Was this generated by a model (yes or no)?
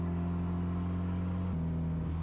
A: no